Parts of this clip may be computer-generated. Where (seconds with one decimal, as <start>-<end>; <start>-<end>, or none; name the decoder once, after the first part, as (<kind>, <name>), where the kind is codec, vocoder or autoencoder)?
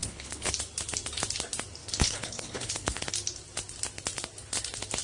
0.0-0.5 (codec, HILCodec); 1.8-3.0